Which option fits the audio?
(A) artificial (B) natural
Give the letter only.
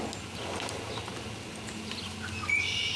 B